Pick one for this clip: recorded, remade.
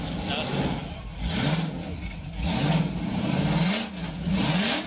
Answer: recorded